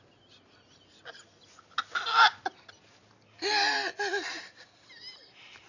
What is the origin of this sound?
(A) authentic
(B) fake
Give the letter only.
A